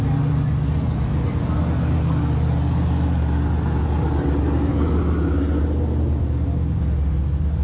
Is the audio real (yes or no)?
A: yes